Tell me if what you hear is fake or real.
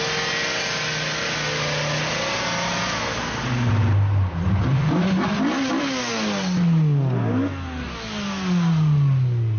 real